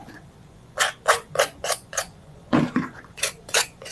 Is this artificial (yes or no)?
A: yes